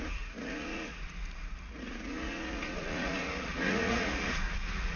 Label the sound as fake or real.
fake